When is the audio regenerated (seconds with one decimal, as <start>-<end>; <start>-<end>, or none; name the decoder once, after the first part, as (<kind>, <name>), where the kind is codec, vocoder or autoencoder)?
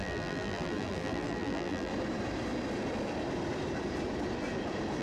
0.0-1.9 (vocoder, BigVGAN v2)